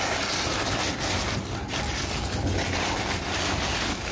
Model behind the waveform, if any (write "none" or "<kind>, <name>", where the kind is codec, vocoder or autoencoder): none